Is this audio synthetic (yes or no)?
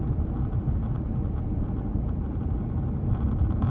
yes